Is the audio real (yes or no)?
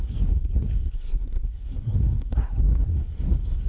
no